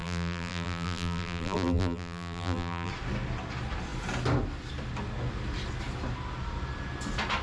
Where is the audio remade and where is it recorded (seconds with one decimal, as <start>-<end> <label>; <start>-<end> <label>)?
0.0-2.9 remade; 2.9-7.4 recorded